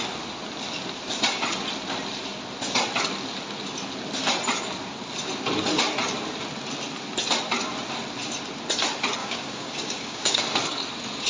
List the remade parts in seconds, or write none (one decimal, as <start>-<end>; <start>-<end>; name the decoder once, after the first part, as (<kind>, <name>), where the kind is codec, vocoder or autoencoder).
9.2-10.4 (codec, DAC)